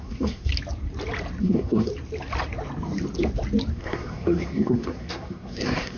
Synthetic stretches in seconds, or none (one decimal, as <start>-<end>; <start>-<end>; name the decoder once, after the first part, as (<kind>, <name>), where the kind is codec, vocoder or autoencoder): 0.0-0.5 (codec, SNAC); 1.4-1.9; 3.7-6.0

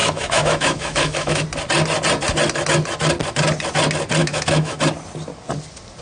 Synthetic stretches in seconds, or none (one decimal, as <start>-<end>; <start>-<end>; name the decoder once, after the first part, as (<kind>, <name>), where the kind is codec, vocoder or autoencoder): 0.0-1.4 (autoencoder, DAC-VAE); 4.2-4.8

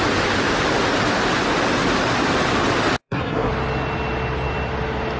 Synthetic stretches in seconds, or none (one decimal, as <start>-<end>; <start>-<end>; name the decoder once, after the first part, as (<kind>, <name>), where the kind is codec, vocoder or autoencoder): 3.0-3.5 (codec, SNAC)